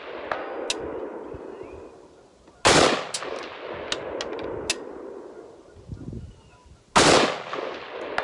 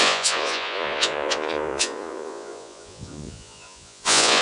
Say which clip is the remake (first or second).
second